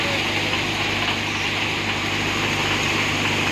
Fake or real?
real